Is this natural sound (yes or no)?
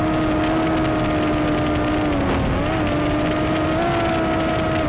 yes